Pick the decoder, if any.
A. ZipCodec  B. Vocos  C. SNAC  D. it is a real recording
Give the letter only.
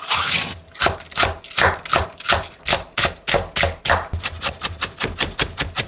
D